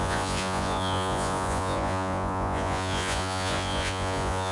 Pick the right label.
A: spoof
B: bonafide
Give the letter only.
A